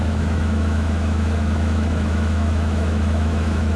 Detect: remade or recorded remade